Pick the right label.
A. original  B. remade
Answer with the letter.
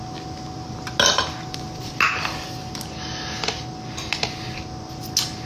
A